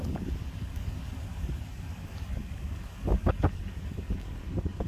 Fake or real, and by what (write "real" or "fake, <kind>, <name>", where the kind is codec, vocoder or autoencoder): fake, codec, DAC